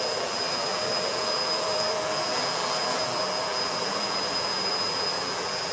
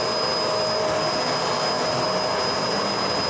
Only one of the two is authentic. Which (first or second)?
second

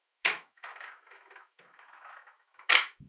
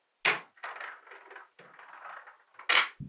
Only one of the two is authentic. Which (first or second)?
second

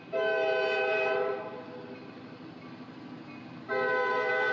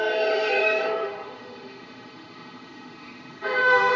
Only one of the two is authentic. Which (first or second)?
first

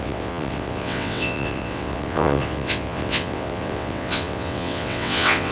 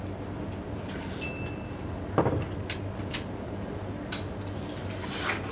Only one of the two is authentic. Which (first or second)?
second